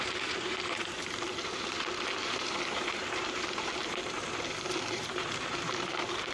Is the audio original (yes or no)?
no